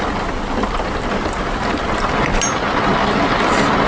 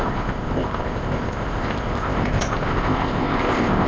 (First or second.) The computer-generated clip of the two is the second